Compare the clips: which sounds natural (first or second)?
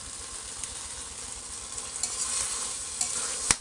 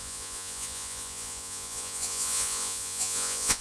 first